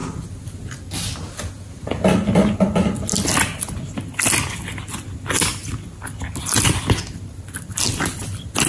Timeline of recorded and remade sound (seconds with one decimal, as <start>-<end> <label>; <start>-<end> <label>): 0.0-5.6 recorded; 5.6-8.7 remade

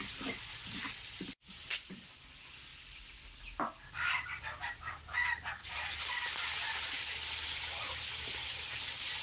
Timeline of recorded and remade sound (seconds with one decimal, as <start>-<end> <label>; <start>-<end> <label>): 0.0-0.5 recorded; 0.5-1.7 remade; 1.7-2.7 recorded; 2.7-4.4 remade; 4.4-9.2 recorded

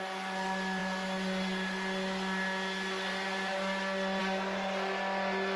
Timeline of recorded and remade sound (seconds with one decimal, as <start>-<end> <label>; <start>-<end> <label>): 0.0-5.6 recorded

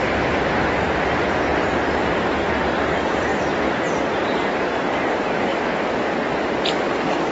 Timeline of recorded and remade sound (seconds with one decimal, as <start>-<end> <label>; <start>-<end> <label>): 0.0-3.3 remade; 3.3-5.1 recorded; 5.1-5.5 remade; 5.5-6.3 recorded; 6.3-7.3 remade